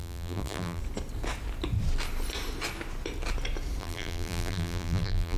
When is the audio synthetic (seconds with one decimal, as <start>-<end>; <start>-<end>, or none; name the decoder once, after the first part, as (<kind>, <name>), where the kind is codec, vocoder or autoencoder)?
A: 0.0-0.8 (vocoder, BigVGAN v2); 3.8-5.4